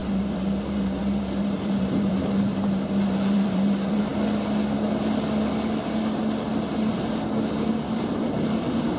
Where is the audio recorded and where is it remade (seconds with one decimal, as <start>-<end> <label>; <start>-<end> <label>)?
0.0-4.1 remade; 4.1-8.0 recorded; 8.0-9.0 remade